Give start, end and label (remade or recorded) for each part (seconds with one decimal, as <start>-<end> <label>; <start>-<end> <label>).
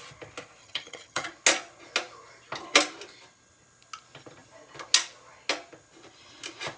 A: 0.0-0.6 recorded; 0.6-1.3 remade; 1.3-6.8 recorded